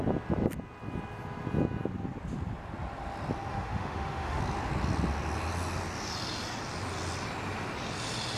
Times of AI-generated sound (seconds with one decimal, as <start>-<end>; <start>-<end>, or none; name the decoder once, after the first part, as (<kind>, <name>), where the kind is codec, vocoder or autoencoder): 3.5-4.4 (autoencoder, DAC-VAE)